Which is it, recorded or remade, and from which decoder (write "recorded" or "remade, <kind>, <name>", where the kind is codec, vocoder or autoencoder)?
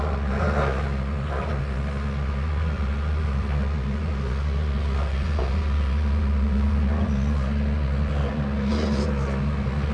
remade, vocoder, Vocos